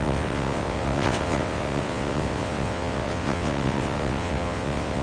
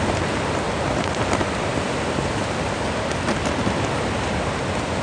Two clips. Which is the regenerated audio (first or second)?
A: first